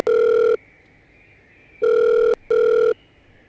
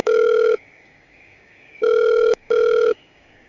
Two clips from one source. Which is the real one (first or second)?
first